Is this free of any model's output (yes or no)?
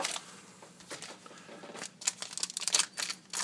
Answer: yes